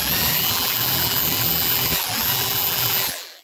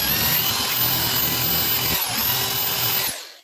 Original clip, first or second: second